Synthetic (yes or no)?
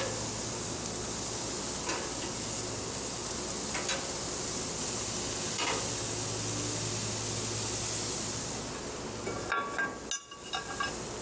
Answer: no